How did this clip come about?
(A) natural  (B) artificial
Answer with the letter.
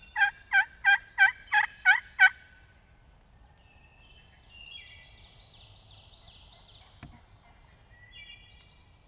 A